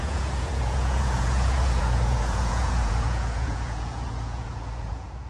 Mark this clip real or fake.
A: fake